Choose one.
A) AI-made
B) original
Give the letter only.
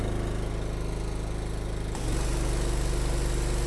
B